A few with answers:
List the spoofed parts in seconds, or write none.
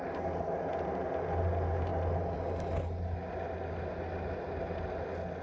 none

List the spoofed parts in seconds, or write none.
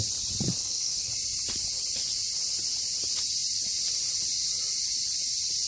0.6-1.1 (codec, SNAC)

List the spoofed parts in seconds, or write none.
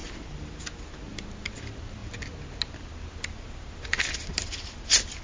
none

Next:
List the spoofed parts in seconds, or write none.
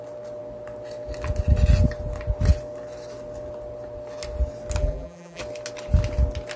4.8-5.4 (vocoder, BigVGAN v2)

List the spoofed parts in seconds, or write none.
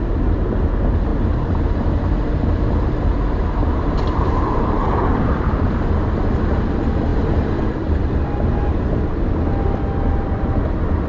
1.1-2.5 (vocoder, BigVGAN v2); 3.6-5.9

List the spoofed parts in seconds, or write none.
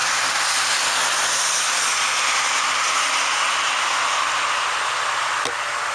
none